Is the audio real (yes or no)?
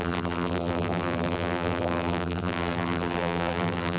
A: no